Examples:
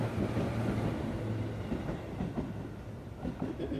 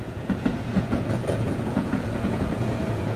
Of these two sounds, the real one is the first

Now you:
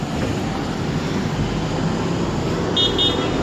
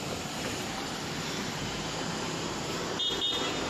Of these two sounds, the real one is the first